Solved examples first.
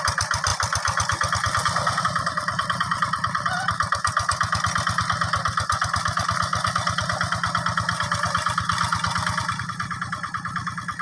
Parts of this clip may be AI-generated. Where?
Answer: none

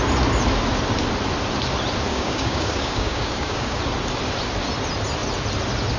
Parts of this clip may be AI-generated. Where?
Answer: 2.1-3.8 (codec, DAC)

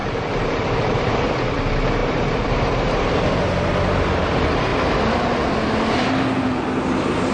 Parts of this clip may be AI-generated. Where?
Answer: 0.0-1.2 (vocoder, BigVGAN v2); 2.0-3.7